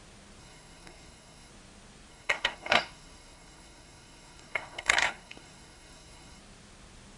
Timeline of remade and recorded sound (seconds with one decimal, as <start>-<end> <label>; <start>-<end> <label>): 0.0-0.4 recorded; 0.4-1.5 remade; 1.5-2.1 recorded; 2.1-6.4 remade; 6.4-7.2 recorded